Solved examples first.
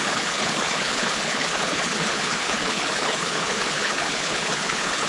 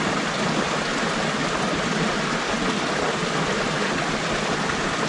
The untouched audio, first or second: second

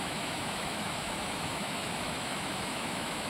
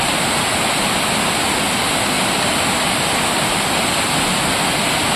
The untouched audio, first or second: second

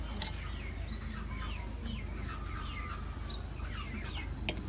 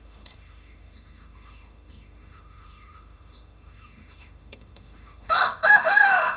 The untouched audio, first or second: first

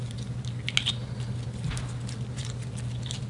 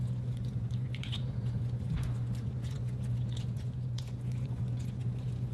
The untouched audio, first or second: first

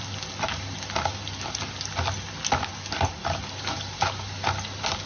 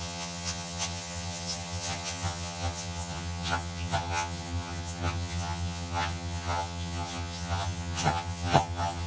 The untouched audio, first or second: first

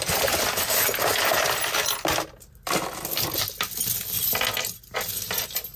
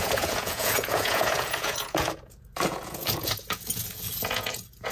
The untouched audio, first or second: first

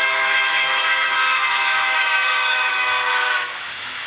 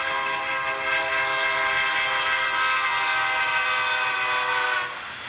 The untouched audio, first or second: second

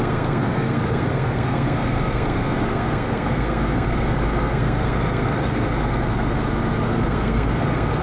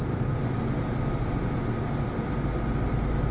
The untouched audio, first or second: second